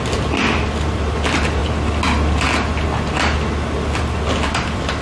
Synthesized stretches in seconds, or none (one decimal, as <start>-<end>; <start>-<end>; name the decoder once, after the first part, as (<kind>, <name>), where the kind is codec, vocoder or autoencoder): none